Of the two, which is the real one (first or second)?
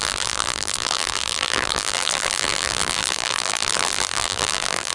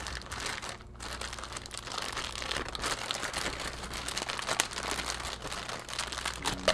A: second